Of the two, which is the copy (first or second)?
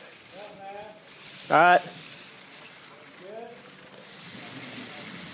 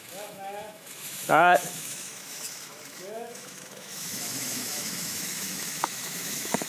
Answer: second